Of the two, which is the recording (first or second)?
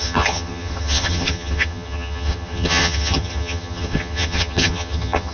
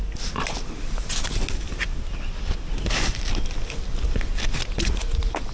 second